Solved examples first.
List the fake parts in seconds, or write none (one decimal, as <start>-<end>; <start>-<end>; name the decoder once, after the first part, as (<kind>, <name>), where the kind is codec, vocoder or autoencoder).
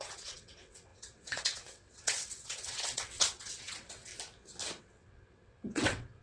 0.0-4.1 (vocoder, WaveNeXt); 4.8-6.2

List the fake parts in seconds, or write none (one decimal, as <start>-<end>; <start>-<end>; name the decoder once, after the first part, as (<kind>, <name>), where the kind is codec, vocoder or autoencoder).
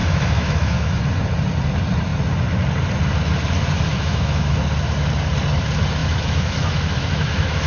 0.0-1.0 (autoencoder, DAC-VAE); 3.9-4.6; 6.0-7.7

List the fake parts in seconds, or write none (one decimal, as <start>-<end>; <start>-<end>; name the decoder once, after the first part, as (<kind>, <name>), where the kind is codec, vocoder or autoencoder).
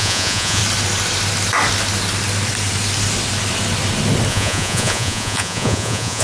0.0-0.6 (vocoder, Vocos); 4.3-6.2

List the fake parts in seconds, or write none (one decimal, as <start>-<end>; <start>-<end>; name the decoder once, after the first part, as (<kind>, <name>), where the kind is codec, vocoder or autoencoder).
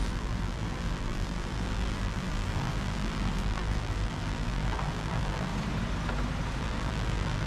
0.0-5.5 (vocoder, BigVGAN v2); 6.6-7.5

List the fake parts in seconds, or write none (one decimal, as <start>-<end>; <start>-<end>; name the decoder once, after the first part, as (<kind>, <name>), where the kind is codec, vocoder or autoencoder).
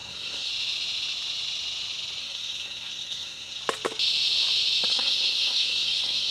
0.0-0.5 (codec, SNAC); 2.2-3.6; 4.9-6.3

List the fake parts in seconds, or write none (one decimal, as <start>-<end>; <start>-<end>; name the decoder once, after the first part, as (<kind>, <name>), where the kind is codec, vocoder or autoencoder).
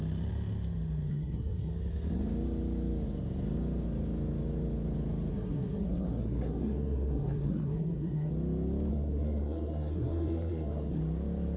1.1-1.7 (codec, SNAC); 5.3-8.3; 8.9-11.0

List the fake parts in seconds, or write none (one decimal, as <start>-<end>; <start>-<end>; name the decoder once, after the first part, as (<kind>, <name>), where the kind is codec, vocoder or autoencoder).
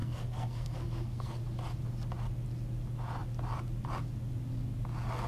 0.0-1.4 (codec, SNAC)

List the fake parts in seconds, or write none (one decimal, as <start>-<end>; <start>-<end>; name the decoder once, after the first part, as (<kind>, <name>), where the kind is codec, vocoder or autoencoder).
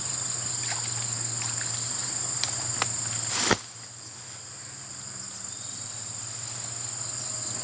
none